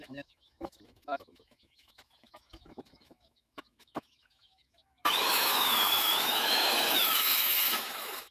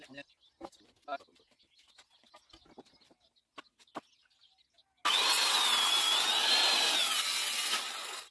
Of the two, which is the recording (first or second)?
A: second